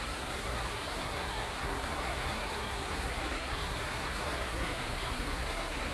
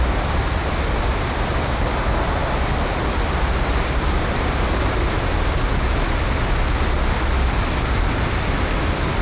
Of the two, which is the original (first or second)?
second